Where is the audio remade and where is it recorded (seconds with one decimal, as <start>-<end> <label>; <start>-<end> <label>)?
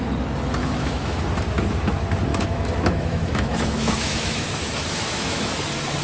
0.0-0.6 recorded; 0.6-1.2 remade; 1.2-2.3 recorded; 2.3-5.5 remade; 5.5-6.0 recorded